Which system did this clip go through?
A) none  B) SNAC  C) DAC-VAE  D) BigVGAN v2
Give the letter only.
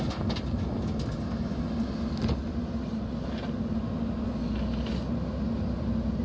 A